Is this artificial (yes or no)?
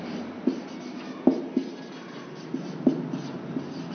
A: no